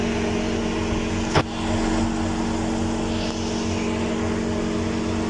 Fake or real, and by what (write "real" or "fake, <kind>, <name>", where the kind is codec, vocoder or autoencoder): real